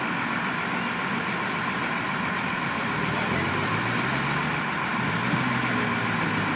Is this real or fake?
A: real